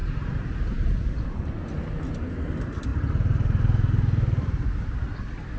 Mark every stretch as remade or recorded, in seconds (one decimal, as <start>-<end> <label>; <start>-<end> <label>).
0.0-0.6 remade; 0.6-2.9 recorded; 2.9-4.9 remade; 4.9-5.6 recorded